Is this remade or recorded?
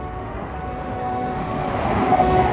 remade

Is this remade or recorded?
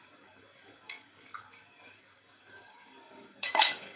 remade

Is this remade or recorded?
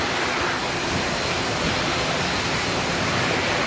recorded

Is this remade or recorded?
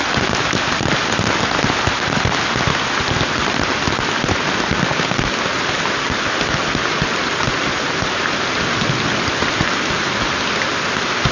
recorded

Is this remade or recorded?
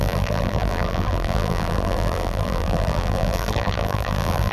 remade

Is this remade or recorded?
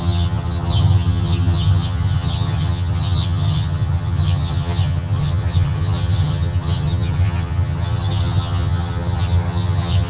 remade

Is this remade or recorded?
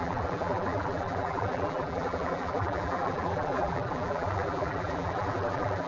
remade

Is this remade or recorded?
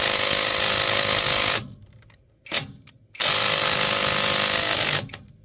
recorded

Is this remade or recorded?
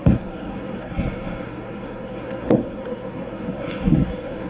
remade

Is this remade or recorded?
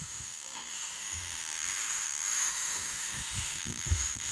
remade